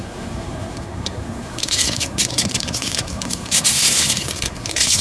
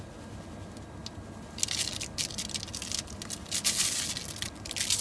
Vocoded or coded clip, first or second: first